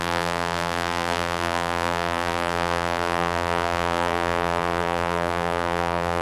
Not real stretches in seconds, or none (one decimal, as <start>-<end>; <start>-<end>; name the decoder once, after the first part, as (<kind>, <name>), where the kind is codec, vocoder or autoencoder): 0.0-6.2 (vocoder, BigVGAN v2)